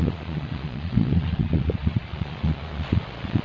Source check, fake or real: fake